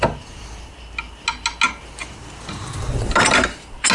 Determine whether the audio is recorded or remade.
recorded